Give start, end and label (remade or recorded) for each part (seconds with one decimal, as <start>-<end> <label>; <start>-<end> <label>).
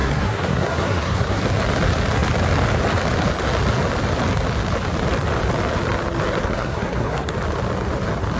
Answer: 0.0-1.4 remade; 1.4-6.4 recorded; 6.4-7.3 remade; 7.3-8.4 recorded